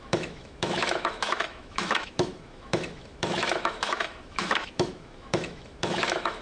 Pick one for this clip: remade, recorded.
remade